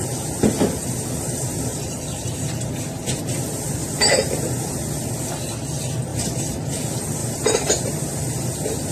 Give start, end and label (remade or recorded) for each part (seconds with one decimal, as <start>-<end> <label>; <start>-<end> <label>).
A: 0.0-1.7 recorded; 1.7-3.2 remade; 3.2-3.8 recorded; 3.8-4.7 remade; 4.7-6.1 recorded; 6.1-6.8 remade; 6.8-7.2 recorded; 7.2-8.5 remade; 8.5-8.9 recorded